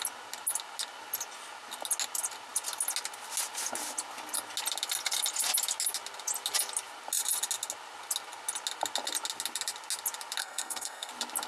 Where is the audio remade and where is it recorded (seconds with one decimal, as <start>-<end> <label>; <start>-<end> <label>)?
0.0-10.4 recorded; 10.4-11.1 remade; 11.1-11.5 recorded